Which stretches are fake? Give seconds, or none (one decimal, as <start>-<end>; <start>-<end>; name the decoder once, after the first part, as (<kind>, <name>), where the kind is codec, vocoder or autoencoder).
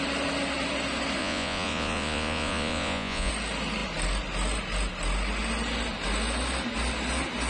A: 1.2-3.3 (vocoder, Vocos)